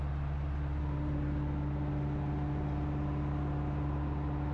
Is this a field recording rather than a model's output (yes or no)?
yes